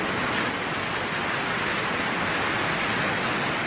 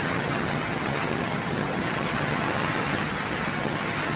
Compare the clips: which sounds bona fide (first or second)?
first